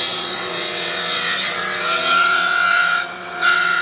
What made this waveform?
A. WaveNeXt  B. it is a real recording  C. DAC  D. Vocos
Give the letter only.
A